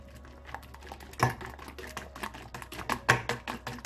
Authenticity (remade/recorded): recorded